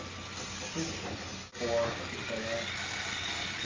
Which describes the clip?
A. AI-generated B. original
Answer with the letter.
B